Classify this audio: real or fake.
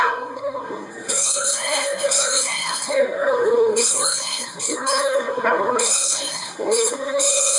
fake